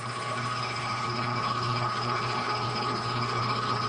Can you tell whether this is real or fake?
fake